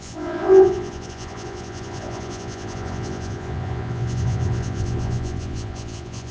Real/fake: fake